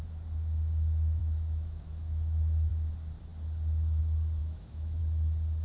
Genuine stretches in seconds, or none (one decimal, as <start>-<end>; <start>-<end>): 0.0-1.2; 2.7-4.4; 5.0-5.6